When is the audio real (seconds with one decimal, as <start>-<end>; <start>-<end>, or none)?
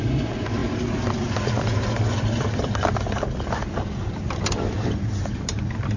0.0-0.6; 4.2-6.0